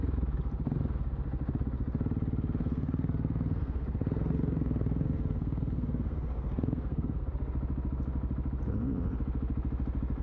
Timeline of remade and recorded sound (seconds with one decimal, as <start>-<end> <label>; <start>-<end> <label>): 0.0-2.6 recorded; 2.6-7.3 remade; 7.3-10.2 recorded